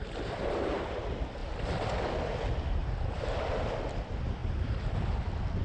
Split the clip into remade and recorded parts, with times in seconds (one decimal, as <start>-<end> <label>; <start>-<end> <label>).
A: 0.0-1.4 recorded; 1.4-2.1 remade; 2.1-2.8 recorded; 2.8-3.5 remade; 3.5-4.4 recorded; 4.4-4.9 remade; 4.9-5.6 recorded